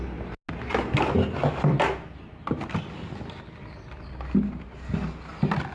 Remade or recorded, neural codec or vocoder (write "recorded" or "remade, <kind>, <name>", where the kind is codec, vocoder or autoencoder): recorded